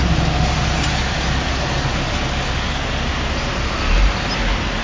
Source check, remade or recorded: recorded